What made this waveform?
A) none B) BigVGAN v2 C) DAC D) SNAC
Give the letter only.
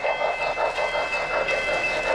B